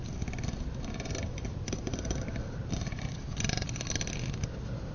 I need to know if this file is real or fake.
real